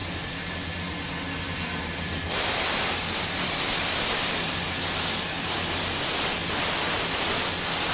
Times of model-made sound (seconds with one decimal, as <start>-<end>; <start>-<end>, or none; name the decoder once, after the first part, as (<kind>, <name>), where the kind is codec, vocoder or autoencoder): none